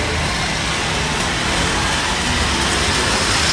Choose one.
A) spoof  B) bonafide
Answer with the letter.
B